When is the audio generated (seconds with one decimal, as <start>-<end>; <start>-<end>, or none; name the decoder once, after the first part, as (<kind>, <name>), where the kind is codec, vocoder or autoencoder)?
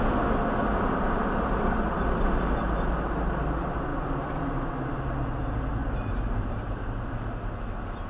5.8-6.7 (vocoder, BigVGAN v2)